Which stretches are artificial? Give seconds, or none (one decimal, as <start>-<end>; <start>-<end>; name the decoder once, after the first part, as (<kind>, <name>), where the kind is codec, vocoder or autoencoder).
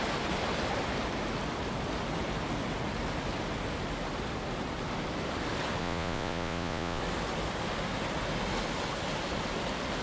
5.8-7.0 (vocoder, Vocos)